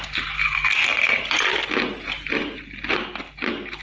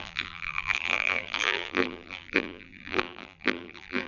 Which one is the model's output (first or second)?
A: second